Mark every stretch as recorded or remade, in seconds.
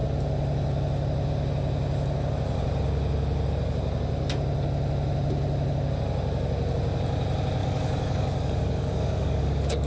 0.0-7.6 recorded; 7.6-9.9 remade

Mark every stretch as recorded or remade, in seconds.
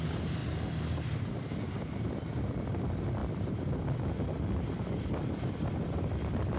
0.0-0.4 recorded; 0.4-1.6 remade; 1.6-3.2 recorded; 3.2-6.6 remade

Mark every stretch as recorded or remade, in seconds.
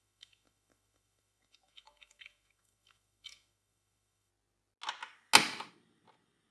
0.0-4.3 remade; 4.3-6.5 recorded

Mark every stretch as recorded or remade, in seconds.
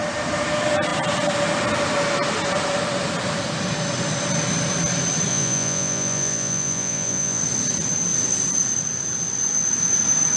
0.0-5.3 recorded; 5.3-7.4 remade; 7.4-10.4 recorded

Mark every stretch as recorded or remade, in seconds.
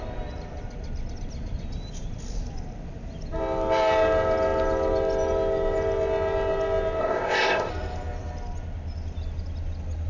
0.0-7.0 recorded; 7.0-7.7 remade; 7.7-10.1 recorded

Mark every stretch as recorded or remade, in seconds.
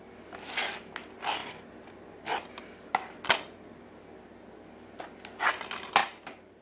0.0-6.6 recorded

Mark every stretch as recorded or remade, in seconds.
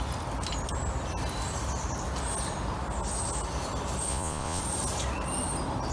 0.0-4.1 recorded; 4.1-4.6 remade; 4.6-5.9 recorded